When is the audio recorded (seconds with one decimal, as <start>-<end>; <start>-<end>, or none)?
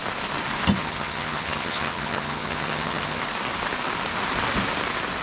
0.0-0.8; 3.2-5.2